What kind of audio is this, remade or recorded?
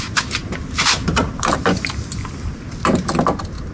recorded